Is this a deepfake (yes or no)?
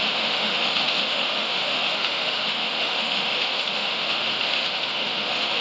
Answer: yes